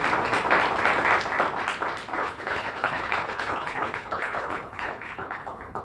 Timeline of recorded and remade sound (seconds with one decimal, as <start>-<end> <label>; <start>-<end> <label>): 0.0-2.1 recorded; 2.1-5.8 remade